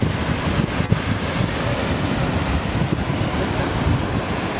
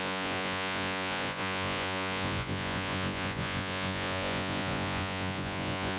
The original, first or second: first